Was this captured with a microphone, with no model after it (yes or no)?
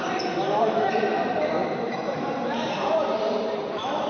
no